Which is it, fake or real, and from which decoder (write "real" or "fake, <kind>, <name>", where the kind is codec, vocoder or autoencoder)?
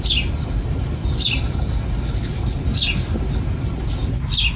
real